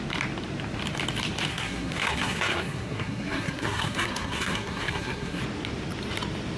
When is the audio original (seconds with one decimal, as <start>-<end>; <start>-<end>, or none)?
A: 0.0-1.5; 5.4-6.6